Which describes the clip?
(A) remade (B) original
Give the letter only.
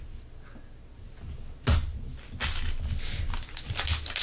B